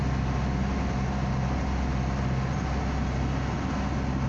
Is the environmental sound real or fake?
real